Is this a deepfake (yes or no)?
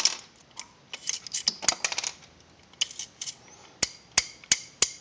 no